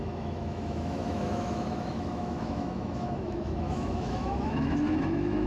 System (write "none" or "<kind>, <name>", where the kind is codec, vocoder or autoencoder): autoencoder, DAC-VAE